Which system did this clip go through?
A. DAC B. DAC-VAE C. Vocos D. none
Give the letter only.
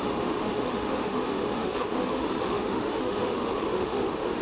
B